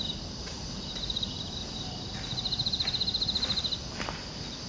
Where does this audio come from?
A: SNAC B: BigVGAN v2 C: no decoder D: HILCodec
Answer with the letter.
C